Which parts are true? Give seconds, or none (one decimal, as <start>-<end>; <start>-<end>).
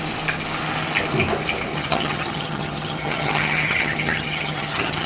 0.0-1.7